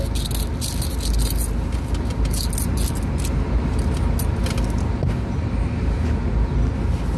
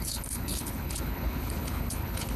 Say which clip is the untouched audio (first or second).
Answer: first